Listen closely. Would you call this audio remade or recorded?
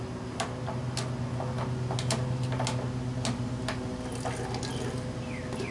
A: recorded